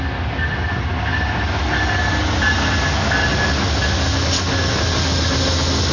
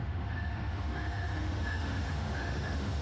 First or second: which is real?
first